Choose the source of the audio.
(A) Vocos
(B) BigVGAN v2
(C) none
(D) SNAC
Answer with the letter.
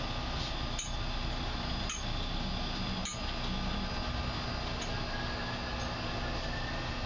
C